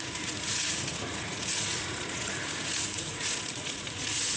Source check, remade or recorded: remade